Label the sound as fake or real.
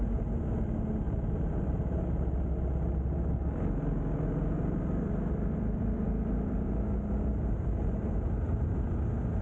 real